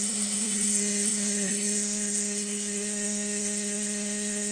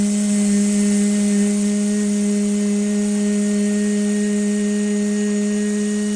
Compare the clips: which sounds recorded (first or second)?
second